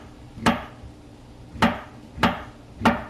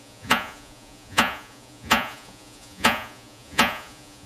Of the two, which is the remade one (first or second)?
second